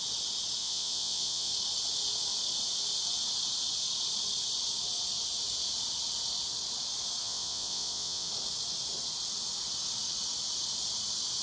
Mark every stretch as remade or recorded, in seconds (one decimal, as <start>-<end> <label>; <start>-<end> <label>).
0.0-0.6 recorded; 0.6-1.5 remade; 1.5-7.2 recorded; 7.2-8.3 remade; 8.3-11.4 recorded